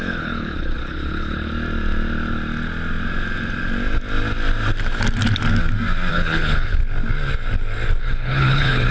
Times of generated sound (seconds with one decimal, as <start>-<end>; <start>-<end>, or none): 0.0-1.5; 6.1-6.8; 8.0-8.9